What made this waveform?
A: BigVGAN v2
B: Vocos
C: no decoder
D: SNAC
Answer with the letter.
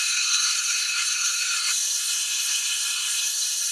D